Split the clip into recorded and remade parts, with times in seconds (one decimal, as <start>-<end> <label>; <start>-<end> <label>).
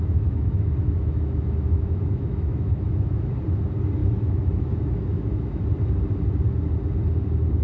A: 0.0-3.4 remade; 3.4-4.0 recorded; 4.0-5.6 remade; 5.6-7.6 recorded